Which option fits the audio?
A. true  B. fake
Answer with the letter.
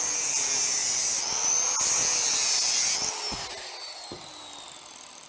A